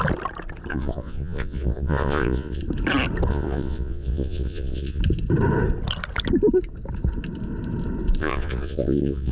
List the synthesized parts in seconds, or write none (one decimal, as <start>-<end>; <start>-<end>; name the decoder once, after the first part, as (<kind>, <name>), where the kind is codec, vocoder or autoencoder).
0.7-2.6 (vocoder, Vocos); 3.3-5.0; 8.2-9.3